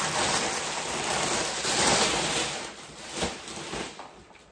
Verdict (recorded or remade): recorded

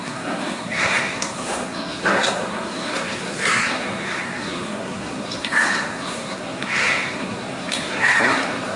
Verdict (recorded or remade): remade